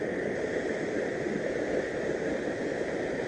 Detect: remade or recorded recorded